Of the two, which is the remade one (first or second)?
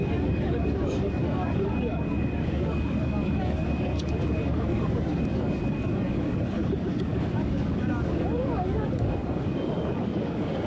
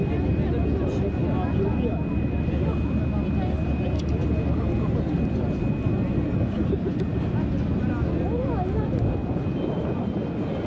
first